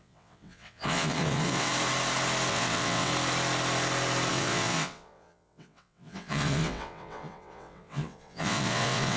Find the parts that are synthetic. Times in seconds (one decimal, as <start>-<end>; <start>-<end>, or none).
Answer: 0.0-1.7; 2.5-3.1; 4.3-9.2